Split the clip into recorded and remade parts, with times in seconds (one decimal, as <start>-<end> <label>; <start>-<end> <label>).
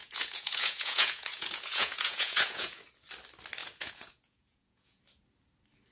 0.0-2.8 remade; 2.8-3.6 recorded; 3.6-5.0 remade; 5.0-5.9 recorded